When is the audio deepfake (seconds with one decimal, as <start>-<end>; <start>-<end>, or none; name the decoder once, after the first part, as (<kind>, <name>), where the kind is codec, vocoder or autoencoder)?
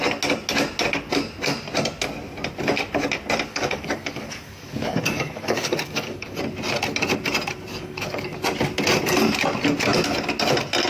3.5-6.4 (codec, DAC); 7.7-8.3